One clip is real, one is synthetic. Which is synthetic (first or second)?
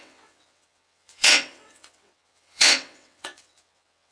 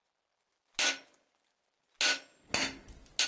first